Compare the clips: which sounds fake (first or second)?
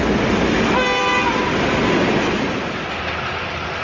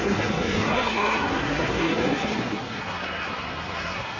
second